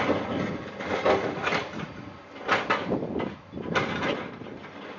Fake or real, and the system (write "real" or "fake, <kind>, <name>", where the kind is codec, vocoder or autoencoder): real